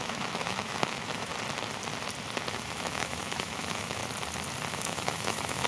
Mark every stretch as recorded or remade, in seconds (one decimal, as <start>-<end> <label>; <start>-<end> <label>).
0.0-1.3 remade; 1.3-2.5 recorded; 2.5-4.0 remade; 4.0-4.7 recorded; 4.7-5.7 remade